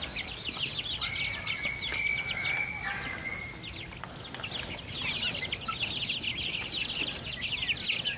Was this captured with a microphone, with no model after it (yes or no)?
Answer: yes